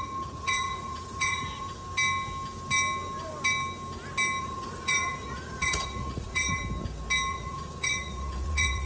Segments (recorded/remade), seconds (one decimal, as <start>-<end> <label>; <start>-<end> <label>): 0.0-1.8 remade; 1.8-4.4 recorded; 4.4-6.6 remade; 6.6-7.3 recorded; 7.3-8.9 remade